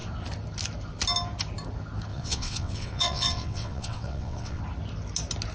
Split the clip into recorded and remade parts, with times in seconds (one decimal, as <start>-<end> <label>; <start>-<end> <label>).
0.0-2.1 recorded; 2.1-4.6 remade; 4.6-5.5 recorded